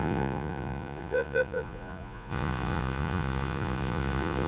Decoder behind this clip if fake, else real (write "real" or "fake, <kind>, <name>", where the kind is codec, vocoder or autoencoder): fake, vocoder, Vocos